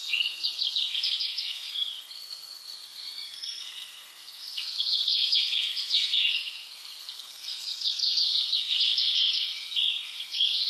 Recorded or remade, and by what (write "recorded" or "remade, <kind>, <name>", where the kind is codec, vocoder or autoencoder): remade, codec, SNAC